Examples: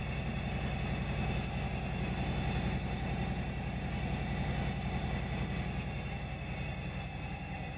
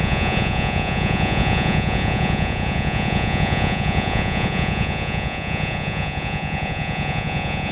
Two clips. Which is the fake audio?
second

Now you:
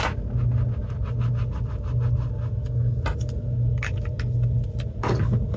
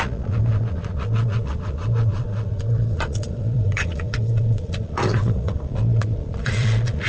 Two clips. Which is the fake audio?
second